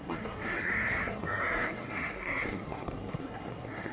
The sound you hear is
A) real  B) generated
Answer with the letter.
B